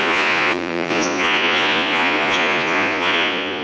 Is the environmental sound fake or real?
fake